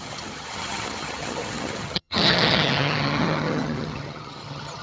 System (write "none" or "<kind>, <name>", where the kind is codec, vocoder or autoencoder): vocoder, HiFi-GAN